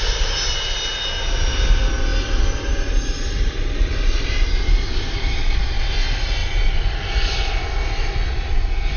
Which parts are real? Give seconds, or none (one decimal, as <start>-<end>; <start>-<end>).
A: 0.0-2.1; 4.5-9.0